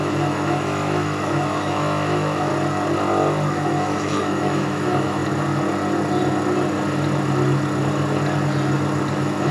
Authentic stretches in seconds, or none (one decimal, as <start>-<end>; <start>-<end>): 2.5-3.5; 5.2-9.1